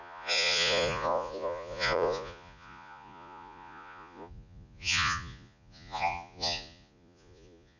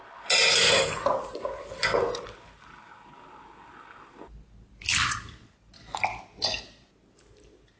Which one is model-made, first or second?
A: first